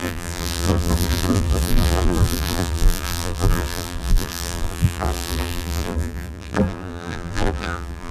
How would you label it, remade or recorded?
remade